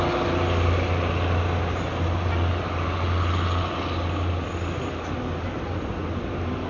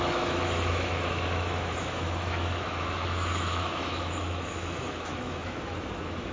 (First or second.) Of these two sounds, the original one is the first